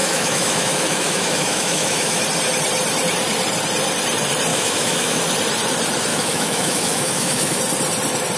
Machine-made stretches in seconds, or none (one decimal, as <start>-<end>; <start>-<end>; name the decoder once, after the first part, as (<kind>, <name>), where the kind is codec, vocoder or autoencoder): 0.0-2.2 (autoencoder, DAC-VAE); 4.5-5.2; 6.1-7.6